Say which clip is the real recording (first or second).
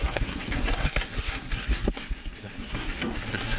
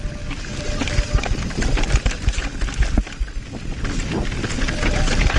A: second